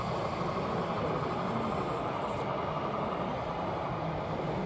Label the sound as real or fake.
real